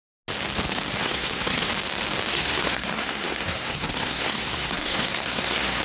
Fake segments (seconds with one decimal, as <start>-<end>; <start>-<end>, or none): 1.0-1.7; 2.3-5.8